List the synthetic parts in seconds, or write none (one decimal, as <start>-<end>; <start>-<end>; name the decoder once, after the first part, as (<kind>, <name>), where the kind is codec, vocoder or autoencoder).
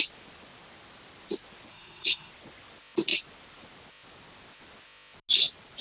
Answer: 1.7-2.3 (codec, SNAC)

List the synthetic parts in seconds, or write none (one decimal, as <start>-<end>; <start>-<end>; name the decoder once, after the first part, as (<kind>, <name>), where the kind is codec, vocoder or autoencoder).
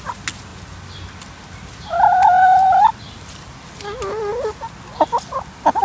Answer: none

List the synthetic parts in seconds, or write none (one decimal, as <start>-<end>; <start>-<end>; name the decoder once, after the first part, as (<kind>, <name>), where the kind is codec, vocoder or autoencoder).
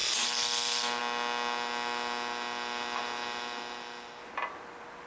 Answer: none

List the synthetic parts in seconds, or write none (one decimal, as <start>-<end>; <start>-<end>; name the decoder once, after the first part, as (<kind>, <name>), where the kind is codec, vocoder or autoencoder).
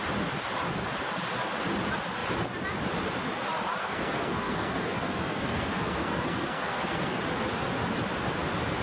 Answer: 3.8-7.2 (codec, SNAC)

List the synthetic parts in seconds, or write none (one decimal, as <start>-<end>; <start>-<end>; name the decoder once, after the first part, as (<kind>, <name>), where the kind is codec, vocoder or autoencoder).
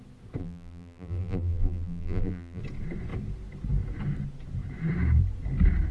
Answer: 0.4-2.6 (vocoder, BigVGAN v2)